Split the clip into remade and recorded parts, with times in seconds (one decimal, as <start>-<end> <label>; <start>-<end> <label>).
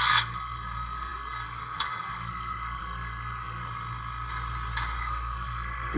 0.0-3.6 remade; 3.6-5.0 recorded; 5.0-6.0 remade